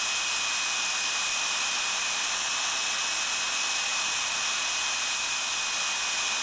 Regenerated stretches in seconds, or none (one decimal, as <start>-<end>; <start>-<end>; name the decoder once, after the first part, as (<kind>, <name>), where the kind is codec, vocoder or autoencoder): 1.3-2.3 (vocoder, BigVGAN v2)